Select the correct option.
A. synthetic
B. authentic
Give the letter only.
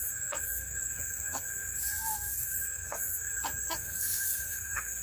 A